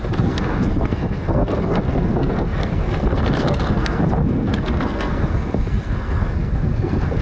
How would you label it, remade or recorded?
remade